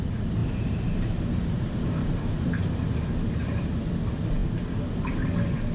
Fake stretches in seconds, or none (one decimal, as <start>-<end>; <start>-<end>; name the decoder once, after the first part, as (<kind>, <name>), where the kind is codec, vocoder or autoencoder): 0.4-2.7 (vocoder, BigVGAN v2)

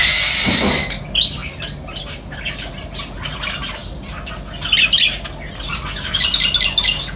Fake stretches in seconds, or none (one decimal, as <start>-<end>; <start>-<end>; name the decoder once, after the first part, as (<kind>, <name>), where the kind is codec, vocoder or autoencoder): 1.4-2.3 (vocoder, BigVGAN v2); 5.7-6.2